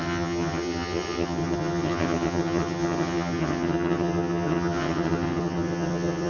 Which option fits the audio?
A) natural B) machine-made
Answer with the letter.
B